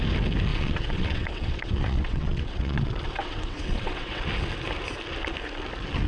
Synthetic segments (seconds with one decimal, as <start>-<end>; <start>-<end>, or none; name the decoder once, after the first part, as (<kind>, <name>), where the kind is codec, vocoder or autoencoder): 0.5-4.2 (vocoder, WaveNeXt)